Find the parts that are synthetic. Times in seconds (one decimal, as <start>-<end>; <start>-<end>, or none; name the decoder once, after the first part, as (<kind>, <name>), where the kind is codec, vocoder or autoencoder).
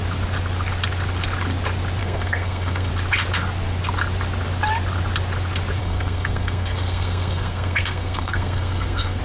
2.0-2.9 (codec, SNAC); 5.8-9.2